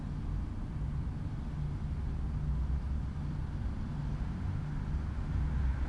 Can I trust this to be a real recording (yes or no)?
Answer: yes